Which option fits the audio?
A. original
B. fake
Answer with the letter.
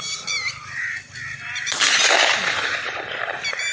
B